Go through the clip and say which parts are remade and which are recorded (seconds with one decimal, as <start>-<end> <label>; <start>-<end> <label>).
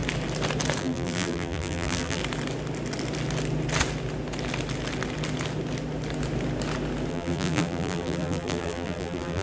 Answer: 0.0-0.8 recorded; 0.8-2.2 remade; 2.2-7.1 recorded; 7.1-9.4 remade